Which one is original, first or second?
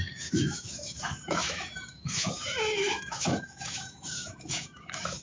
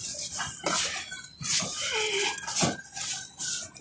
second